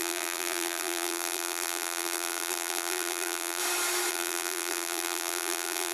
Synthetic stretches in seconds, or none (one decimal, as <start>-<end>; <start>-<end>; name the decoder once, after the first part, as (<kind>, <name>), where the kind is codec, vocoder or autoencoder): 0.0-3.6 (vocoder, BigVGAN v2); 4.1-5.9